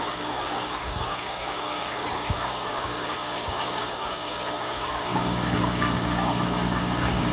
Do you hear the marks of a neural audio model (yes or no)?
yes